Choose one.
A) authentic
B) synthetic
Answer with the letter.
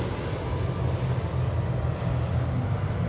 A